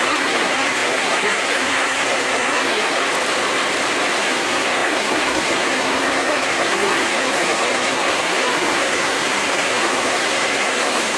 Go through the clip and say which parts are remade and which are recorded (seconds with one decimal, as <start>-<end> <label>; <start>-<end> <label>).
0.0-3.0 remade; 3.0-4.2 recorded; 4.2-11.2 remade